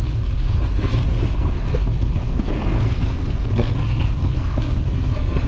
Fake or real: fake